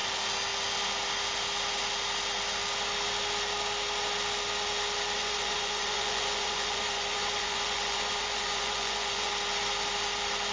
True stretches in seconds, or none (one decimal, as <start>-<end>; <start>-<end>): 0.0-5.2; 9.3-10.5